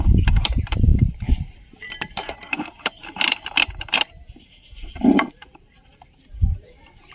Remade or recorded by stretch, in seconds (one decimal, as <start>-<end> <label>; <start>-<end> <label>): 0.0-7.1 remade